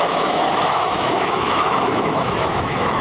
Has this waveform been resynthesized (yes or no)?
yes